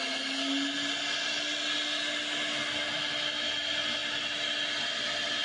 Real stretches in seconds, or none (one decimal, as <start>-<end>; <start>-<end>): 0.0-5.4